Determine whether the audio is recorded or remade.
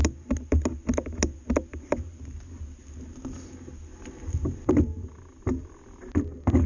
recorded